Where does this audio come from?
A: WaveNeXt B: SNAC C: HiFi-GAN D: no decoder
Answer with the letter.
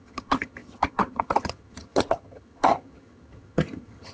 C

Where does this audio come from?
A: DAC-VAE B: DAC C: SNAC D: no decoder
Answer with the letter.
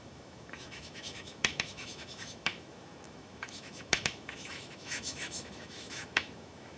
A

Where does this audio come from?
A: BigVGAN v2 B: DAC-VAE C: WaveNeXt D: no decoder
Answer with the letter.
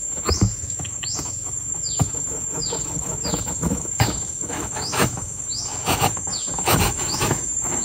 B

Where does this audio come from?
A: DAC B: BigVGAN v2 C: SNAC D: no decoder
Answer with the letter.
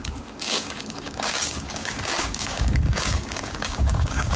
A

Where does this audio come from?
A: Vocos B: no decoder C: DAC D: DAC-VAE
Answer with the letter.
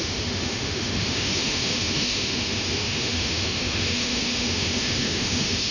D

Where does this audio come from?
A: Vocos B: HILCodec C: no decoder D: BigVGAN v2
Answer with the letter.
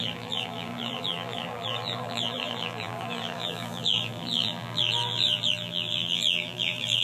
D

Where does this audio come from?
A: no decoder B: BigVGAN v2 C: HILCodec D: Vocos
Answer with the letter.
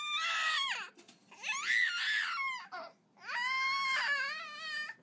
A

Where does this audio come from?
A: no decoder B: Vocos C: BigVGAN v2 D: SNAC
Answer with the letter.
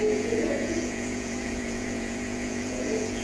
B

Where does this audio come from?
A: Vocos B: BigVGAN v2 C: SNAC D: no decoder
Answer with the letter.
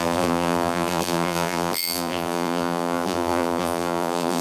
B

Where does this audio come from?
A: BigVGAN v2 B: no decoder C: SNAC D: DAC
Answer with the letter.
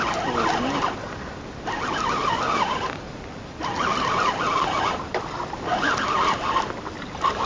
B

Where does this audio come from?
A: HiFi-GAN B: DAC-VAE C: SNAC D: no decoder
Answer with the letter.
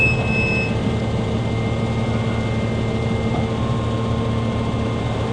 D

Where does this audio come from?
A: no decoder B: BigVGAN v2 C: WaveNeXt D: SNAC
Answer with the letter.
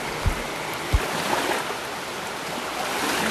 A